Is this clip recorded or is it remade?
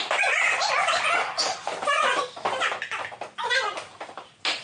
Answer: recorded